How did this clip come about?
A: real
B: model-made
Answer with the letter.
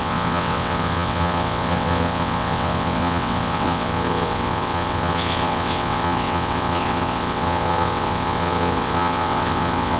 B